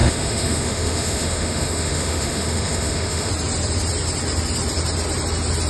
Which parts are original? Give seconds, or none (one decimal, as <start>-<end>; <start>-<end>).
3.3-5.7